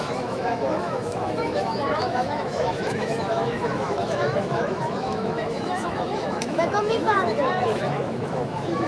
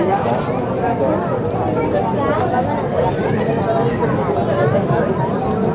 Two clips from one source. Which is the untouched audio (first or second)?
second